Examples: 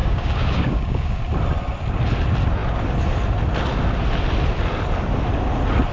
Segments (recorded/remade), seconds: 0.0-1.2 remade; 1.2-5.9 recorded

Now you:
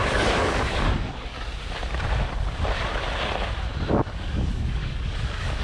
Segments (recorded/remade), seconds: 0.0-1.3 remade; 1.3-3.9 recorded; 3.9-5.6 remade

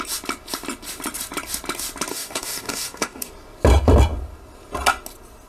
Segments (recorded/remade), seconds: 0.0-2.1 recorded; 2.1-3.3 remade; 3.3-5.5 recorded

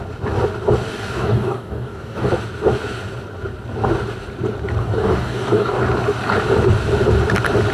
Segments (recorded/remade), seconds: 0.0-0.9 recorded; 0.9-2.3 remade; 2.3-4.8 recorded; 4.8-5.8 remade; 5.8-7.7 recorded

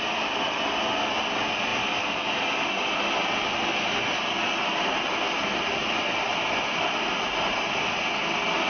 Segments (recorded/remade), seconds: 0.0-8.7 recorded

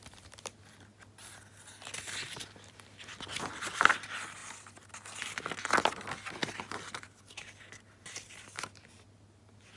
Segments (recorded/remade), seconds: 0.0-9.8 recorded

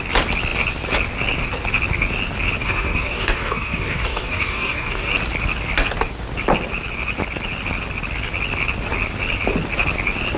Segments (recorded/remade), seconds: 0.0-2.6 recorded; 2.6-5.1 remade; 5.1-10.4 recorded

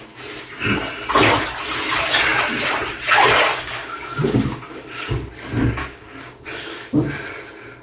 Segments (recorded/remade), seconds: 0.0-3.5 recorded; 3.5-5.3 remade; 5.3-5.8 recorded; 5.8-6.8 remade; 6.8-7.8 recorded